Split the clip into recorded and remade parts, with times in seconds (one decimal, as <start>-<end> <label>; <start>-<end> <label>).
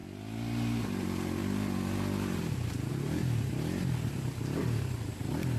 0.0-5.6 recorded